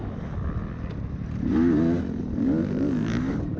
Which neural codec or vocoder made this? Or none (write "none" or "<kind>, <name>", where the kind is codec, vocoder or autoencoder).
none